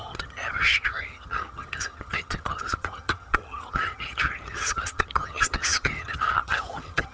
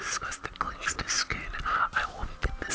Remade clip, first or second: first